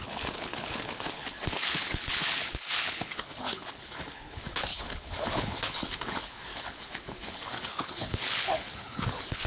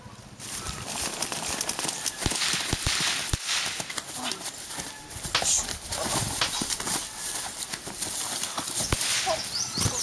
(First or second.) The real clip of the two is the second